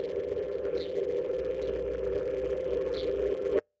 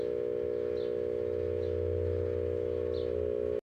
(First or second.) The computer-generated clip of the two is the first